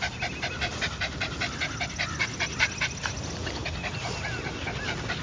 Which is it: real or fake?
real